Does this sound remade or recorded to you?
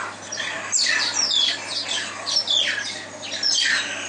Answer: recorded